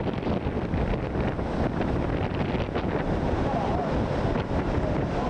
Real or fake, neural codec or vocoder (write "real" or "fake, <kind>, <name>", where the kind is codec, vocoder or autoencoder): real